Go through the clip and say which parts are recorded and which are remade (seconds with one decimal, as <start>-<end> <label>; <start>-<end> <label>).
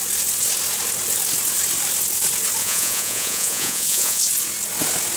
0.0-2.6 recorded; 2.6-4.2 remade; 4.2-5.2 recorded